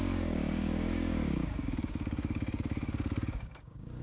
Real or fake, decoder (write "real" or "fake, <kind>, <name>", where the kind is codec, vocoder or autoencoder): fake, codec, DAC